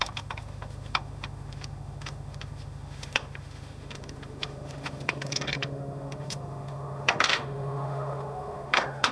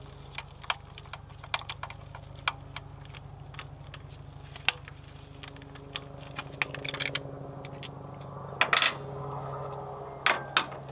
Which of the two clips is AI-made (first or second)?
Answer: first